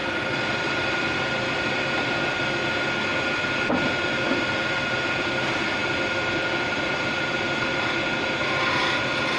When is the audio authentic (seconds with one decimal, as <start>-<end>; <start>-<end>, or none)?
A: 0.0-9.4